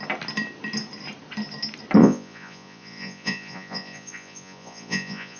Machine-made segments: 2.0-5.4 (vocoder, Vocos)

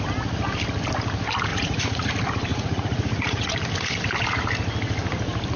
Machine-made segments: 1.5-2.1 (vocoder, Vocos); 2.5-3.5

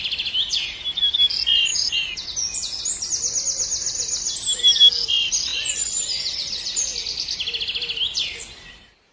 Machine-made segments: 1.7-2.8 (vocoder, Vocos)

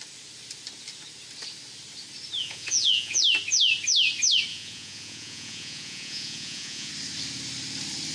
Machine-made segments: 2.4-3.2 (vocoder, Vocos); 4.5-6.9

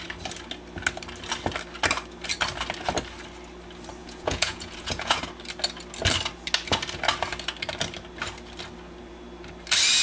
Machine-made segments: 4.0-5.2 (vocoder, Vocos)

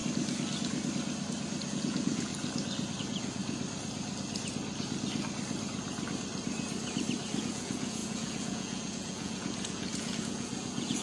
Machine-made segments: 1.7-2.3 (vocoder, Vocos); 3.0-3.4; 7.4-11.0